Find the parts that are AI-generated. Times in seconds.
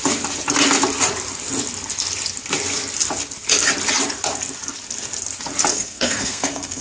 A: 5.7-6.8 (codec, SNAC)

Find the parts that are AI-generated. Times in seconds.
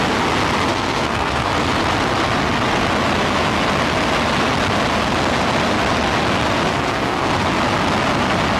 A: 0.7-1.5 (codec, SNAC); 6.7-7.3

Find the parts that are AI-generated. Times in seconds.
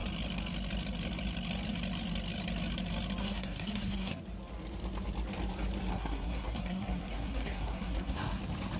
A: 3.2-4.2 (codec, SNAC); 5.9-8.4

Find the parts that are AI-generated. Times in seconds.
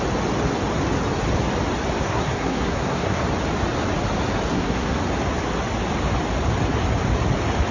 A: 2.0-3.2 (codec, SNAC); 4.5-5.0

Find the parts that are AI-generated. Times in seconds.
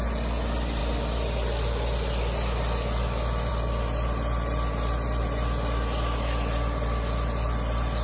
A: none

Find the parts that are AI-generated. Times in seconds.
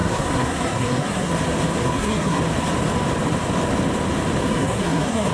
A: 0.0-1.3 (codec, SNAC); 1.8-2.4; 4.4-5.3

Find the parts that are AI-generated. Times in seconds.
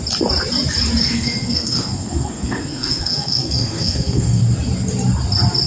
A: 1.0-4.4 (codec, SNAC)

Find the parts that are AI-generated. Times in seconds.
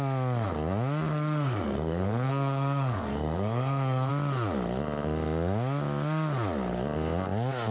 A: 1.1-4.1 (codec, SNAC)